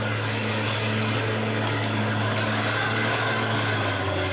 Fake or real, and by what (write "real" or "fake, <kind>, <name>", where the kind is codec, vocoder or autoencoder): fake, codec, DAC